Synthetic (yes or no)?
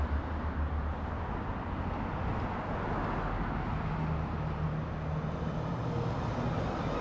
no